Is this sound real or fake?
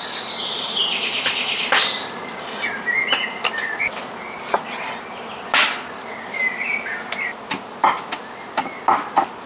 real